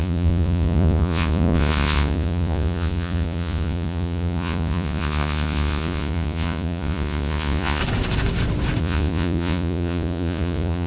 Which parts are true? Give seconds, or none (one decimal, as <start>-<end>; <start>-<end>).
7.8-8.8